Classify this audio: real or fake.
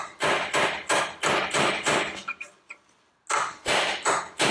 real